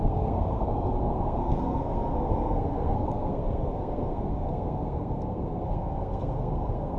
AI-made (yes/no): yes